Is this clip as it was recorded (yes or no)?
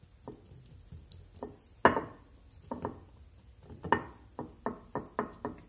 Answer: yes